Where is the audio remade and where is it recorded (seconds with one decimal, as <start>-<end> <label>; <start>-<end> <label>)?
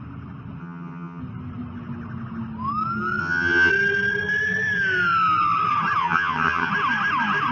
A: 0.0-0.6 recorded; 0.6-1.2 remade; 1.2-3.2 recorded; 3.2-3.7 remade; 3.7-6.0 recorded; 6.0-6.7 remade; 6.7-7.5 recorded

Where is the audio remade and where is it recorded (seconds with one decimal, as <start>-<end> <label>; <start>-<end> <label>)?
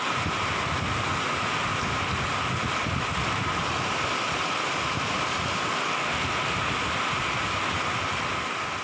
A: 0.0-8.8 recorded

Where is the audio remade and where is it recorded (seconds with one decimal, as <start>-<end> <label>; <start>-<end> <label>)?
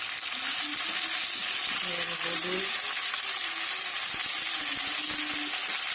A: 0.0-5.9 recorded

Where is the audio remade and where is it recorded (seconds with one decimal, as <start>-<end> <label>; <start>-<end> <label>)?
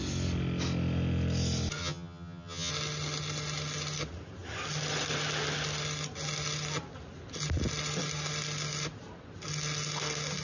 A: 0.0-1.8 recorded; 1.8-2.7 remade; 2.7-10.4 recorded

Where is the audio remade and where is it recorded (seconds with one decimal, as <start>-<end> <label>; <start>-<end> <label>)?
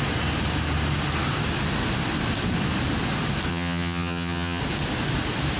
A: 0.0-3.5 recorded; 3.5-4.6 remade; 4.6-5.6 recorded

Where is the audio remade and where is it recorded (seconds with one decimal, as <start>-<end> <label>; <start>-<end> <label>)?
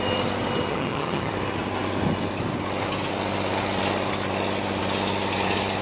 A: 0.0-0.7 recorded; 0.7-1.3 remade; 1.3-5.8 recorded